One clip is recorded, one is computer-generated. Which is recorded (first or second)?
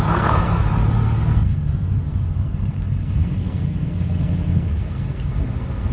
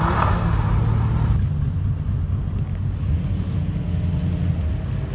second